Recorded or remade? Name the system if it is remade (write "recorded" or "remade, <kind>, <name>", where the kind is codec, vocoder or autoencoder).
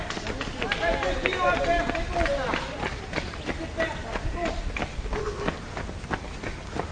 recorded